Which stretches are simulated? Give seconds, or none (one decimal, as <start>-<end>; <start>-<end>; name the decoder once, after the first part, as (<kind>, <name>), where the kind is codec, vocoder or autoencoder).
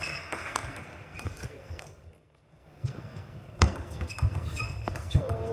0.0-5.5 (codec, SNAC)